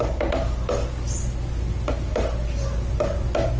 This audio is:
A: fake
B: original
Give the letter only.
B